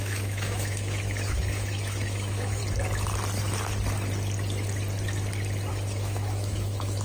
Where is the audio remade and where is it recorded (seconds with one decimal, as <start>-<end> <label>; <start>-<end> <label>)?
0.0-2.6 remade; 2.6-5.7 recorded; 5.7-7.0 remade